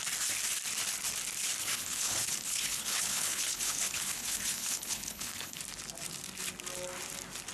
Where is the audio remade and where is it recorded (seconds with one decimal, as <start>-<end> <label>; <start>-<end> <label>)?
0.0-1.6 recorded; 1.6-5.6 remade; 5.6-7.5 recorded